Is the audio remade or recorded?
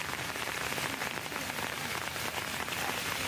recorded